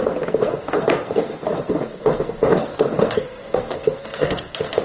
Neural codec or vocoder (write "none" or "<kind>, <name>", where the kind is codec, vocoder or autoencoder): codec, SNAC